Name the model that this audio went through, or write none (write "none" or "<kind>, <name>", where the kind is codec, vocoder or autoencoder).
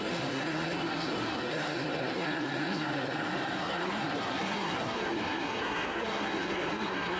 codec, SNAC